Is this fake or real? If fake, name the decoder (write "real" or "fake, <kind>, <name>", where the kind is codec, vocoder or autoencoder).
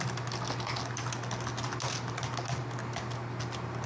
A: real